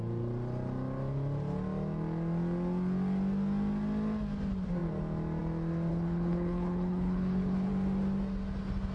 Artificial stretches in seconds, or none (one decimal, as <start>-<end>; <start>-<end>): 5.9-7.7